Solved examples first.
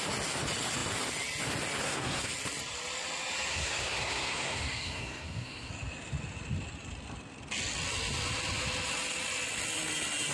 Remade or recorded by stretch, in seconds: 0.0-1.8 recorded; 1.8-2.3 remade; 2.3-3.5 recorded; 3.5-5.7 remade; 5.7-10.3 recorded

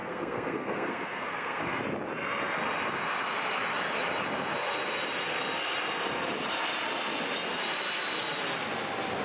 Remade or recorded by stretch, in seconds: 0.0-1.8 remade; 1.8-9.2 recorded

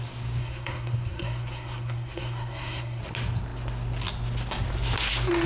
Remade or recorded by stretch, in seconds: 0.0-0.4 recorded; 0.4-3.0 remade; 3.0-5.5 recorded

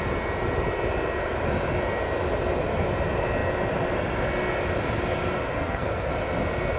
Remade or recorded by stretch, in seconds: 0.0-5.6 recorded; 5.6-6.1 remade; 6.1-6.8 recorded

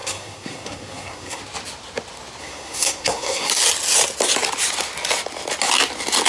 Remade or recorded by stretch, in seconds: 0.0-1.4 remade; 1.4-2.4 recorded; 2.4-3.5 remade; 3.5-6.3 recorded

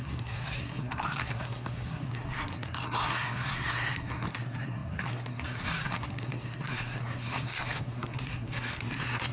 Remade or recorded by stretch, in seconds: 0.0-9.3 remade

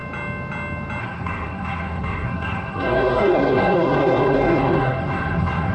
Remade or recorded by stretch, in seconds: 0.0-1.0 recorded; 1.0-5.7 remade